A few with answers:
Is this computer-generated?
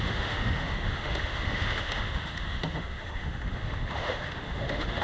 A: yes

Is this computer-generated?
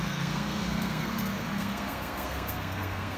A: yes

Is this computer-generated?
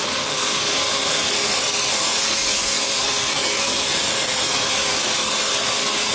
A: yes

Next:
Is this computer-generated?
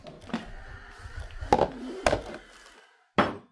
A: no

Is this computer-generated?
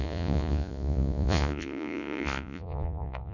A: yes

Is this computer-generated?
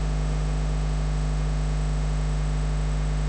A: yes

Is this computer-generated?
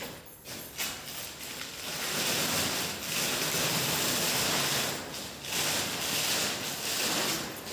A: no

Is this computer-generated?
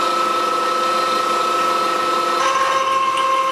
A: no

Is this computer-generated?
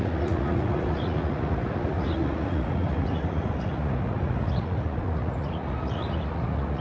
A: yes